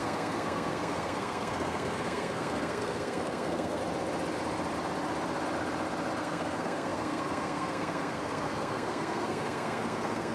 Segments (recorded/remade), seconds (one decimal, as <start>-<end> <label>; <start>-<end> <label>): 0.0-3.8 remade; 3.8-6.2 recorded; 6.2-10.3 remade